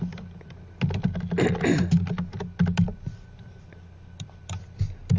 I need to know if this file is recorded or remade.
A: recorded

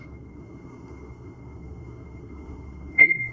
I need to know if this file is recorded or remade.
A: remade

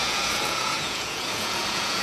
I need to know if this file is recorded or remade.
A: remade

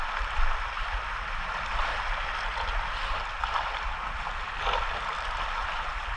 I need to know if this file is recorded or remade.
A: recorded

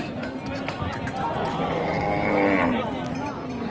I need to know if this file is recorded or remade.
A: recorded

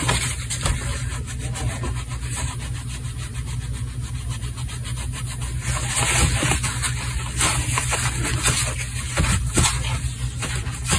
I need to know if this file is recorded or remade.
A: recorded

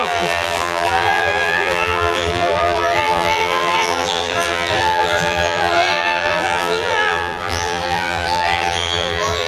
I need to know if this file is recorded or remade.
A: remade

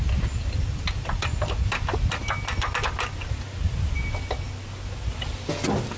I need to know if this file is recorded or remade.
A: recorded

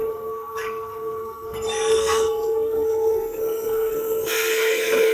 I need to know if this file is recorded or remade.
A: remade